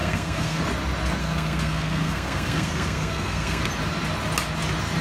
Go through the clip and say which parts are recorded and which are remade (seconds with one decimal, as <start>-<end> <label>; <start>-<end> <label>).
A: 0.0-0.6 remade; 0.6-1.2 recorded; 1.2-3.6 remade; 3.6-5.0 recorded